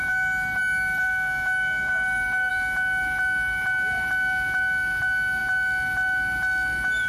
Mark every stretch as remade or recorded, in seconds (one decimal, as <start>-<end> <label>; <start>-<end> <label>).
0.0-2.5 remade; 2.5-7.1 recorded